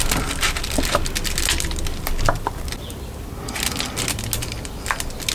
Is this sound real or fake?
real